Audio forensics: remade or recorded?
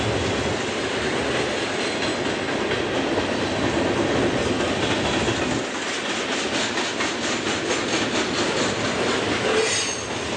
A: recorded